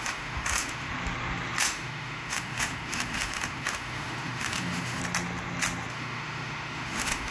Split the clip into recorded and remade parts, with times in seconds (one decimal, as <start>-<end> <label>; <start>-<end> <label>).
0.0-0.9 remade; 0.9-1.6 recorded; 1.6-5.0 remade; 5.0-5.9 recorded; 5.9-7.3 remade